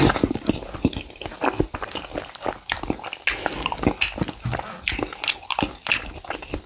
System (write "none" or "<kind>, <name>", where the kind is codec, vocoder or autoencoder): none